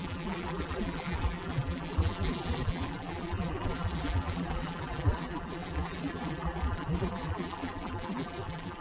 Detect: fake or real fake